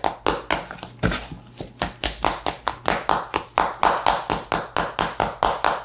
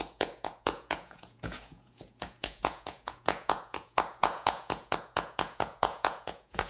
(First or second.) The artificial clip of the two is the second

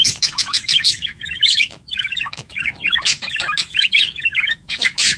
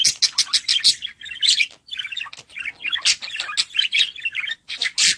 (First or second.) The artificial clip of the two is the first